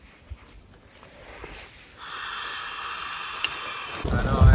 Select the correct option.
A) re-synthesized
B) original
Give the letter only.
B